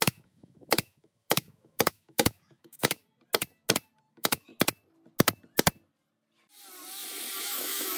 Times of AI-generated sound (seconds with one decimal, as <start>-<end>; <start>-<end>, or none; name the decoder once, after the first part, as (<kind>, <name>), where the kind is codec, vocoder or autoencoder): 0.0-3.0 (autoencoder, DAC-VAE); 4.1-4.5; 7.4-8.0